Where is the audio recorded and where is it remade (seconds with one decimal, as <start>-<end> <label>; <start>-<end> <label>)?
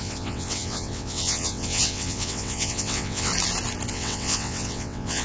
0.0-3.3 remade; 3.3-3.9 recorded; 3.9-5.2 remade